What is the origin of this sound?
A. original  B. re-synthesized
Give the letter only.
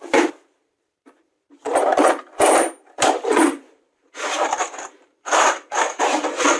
B